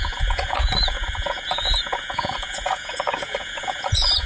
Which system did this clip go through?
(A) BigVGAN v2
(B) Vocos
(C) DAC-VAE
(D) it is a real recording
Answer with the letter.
B